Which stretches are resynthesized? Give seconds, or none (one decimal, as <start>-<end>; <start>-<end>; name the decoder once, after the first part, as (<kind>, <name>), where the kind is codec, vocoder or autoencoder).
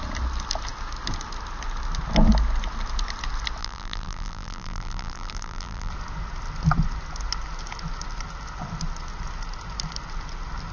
3.6-5.9 (vocoder, BigVGAN v2)